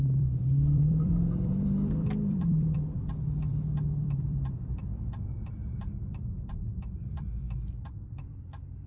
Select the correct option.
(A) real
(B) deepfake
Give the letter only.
B